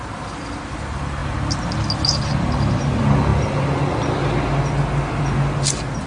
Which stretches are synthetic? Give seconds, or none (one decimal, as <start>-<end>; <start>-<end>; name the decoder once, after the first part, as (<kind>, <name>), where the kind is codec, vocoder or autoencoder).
none